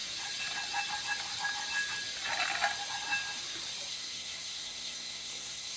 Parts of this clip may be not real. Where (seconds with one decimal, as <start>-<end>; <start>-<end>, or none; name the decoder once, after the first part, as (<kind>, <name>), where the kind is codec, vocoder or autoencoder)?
3.9-5.8 (codec, SNAC)